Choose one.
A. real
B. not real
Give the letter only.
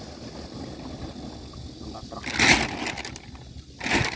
A